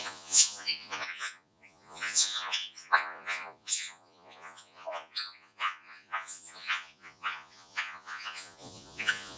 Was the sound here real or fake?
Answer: fake